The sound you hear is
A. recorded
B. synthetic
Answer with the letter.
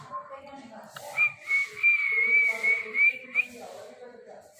A